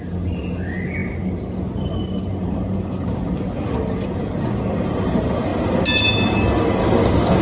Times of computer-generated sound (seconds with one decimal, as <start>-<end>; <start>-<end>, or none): 6.8-7.4